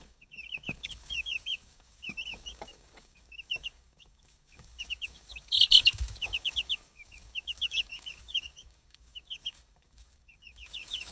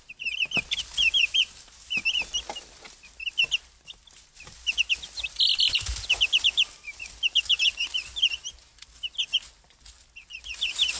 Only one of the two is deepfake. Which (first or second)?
first